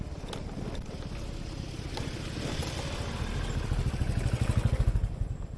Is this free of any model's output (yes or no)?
yes